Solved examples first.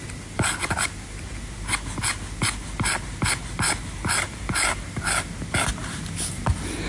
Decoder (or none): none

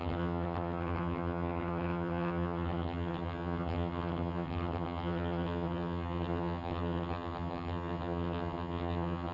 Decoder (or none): vocoder, HiFi-GAN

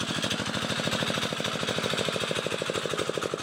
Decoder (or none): none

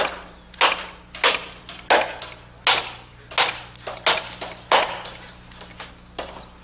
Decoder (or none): none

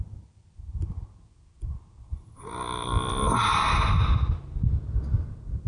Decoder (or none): none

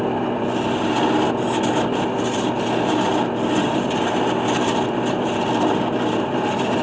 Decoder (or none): none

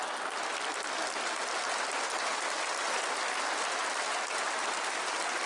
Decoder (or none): none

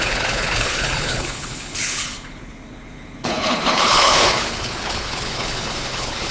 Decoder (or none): codec, HILCodec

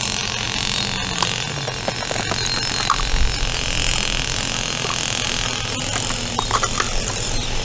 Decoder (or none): none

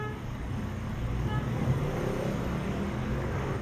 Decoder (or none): codec, DAC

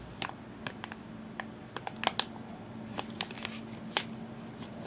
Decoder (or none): none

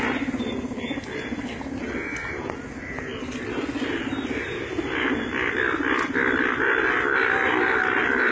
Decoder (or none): none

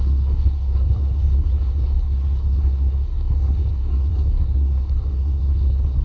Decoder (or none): codec, SNAC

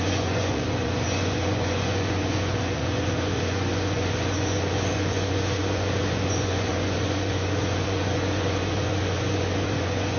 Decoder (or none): vocoder, Vocos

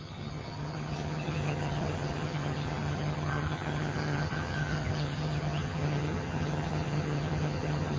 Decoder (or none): vocoder, HiFi-GAN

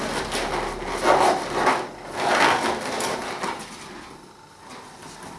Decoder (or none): none